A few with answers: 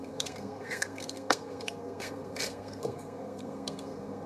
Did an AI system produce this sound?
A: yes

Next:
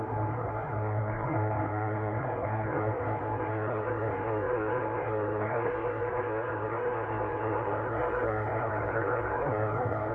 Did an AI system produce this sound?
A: yes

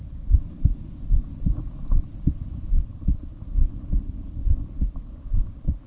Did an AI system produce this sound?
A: no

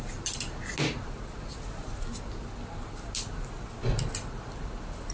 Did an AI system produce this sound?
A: no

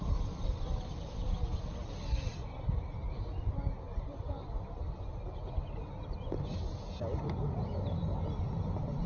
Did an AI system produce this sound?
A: no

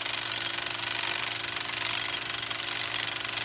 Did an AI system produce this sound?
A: no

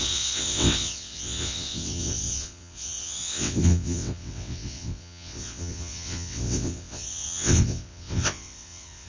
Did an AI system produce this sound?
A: yes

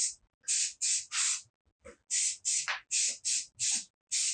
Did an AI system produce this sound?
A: no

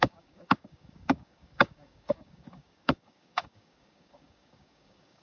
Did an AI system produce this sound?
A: yes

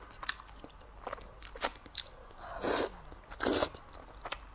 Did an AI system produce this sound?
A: no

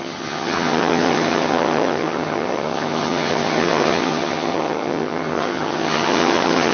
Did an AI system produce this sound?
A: yes